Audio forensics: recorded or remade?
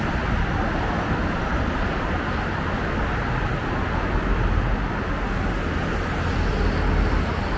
recorded